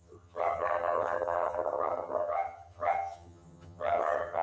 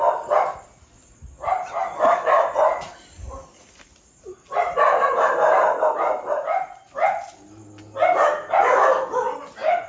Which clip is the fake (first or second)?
first